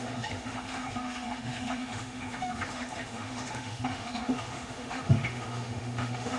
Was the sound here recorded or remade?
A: remade